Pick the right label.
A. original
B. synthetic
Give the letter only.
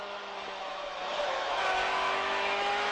B